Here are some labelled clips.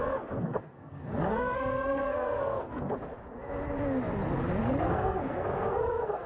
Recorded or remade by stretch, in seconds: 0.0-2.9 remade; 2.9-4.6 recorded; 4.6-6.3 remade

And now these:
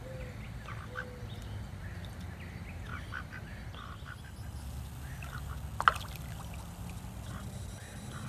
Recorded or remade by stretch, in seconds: 0.0-8.3 recorded

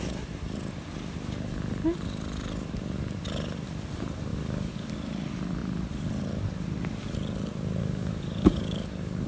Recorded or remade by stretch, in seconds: 0.0-4.3 recorded; 4.3-4.9 remade; 4.9-7.8 recorded; 7.8-9.3 remade

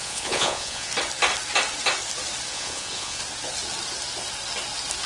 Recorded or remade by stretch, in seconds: 0.0-0.9 remade; 0.9-2.5 recorded; 2.5-3.2 remade; 3.2-5.1 recorded

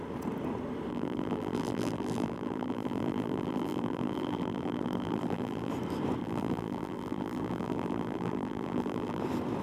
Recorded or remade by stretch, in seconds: 0.0-0.9 recorded; 0.9-5.7 remade; 5.7-6.2 recorded; 6.2-9.2 remade; 9.2-9.6 recorded

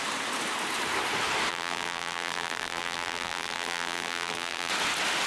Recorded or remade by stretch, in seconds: 0.0-1.5 recorded; 1.5-4.7 remade; 4.7-5.3 recorded